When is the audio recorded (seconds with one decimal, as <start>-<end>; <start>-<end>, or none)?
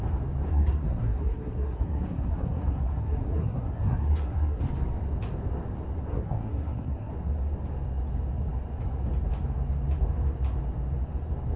0.0-0.5; 4.6-6.1; 7.1-11.6